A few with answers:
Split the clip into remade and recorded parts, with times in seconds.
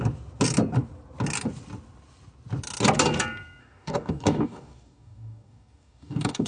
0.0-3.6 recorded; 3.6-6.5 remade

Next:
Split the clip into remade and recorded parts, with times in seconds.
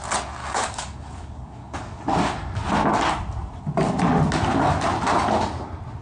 0.0-0.4 recorded; 0.4-2.0 remade; 2.0-6.0 recorded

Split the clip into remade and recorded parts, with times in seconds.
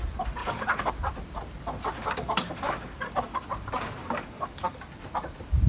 0.0-0.4 recorded; 0.4-0.9 remade; 0.9-2.0 recorded; 2.0-3.4 remade; 3.4-4.0 recorded; 4.0-4.8 remade; 4.8-5.7 recorded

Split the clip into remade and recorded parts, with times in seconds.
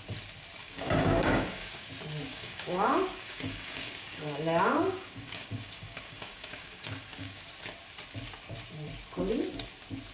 0.0-0.6 recorded; 0.6-1.9 remade; 1.9-2.3 recorded; 2.3-7.4 remade; 7.4-10.1 recorded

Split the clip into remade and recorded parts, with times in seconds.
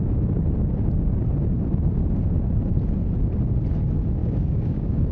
0.0-4.2 recorded; 4.2-5.1 remade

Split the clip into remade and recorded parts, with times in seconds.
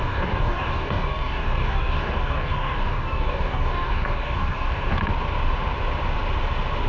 0.0-5.0 remade; 5.0-6.9 recorded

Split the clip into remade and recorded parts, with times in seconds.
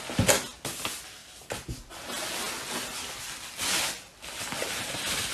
0.0-5.3 recorded